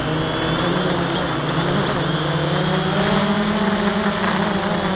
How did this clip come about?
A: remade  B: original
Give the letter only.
B